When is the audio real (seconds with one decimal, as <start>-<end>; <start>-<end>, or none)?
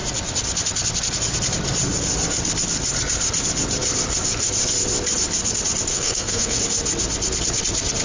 0.0-5.9; 6.6-8.0